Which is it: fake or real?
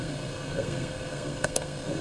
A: fake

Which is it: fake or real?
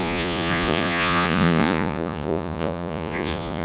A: fake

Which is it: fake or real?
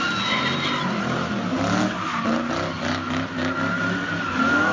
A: real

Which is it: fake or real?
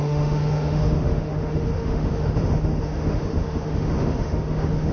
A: fake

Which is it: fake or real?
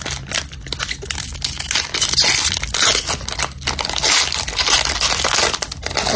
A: real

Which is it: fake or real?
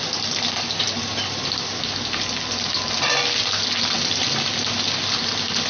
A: real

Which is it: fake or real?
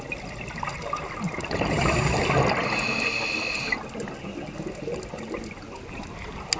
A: real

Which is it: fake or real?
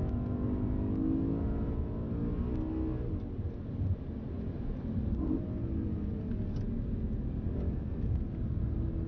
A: real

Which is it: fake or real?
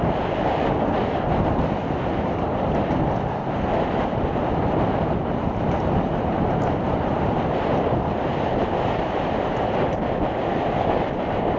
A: fake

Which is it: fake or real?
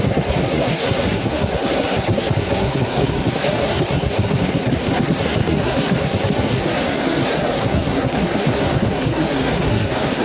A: fake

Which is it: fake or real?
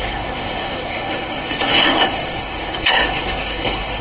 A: fake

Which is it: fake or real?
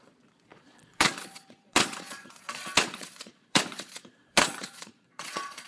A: fake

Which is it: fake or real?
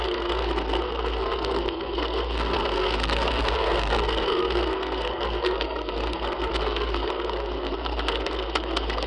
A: fake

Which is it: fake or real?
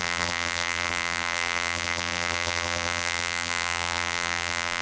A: fake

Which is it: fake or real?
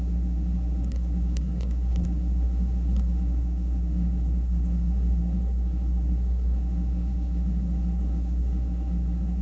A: fake